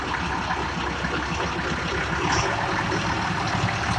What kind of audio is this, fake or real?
real